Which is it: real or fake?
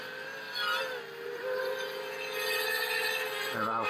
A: real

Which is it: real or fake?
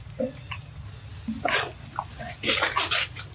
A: real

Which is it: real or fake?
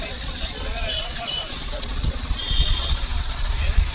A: fake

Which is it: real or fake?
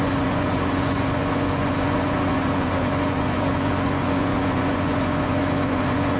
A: fake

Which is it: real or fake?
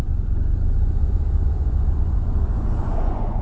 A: fake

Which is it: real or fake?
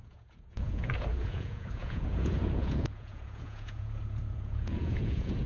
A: fake